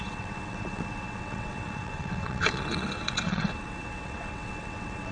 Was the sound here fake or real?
fake